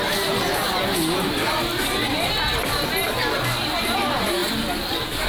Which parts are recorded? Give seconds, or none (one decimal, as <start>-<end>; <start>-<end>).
0.0-5.3